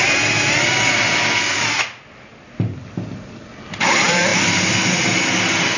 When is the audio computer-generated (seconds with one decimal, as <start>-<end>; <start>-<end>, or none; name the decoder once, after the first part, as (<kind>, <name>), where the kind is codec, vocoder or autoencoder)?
none